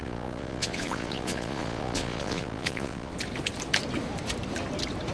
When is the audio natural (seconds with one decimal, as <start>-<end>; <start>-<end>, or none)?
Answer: 3.1-5.1